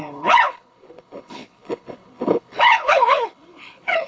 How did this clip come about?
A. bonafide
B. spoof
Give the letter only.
B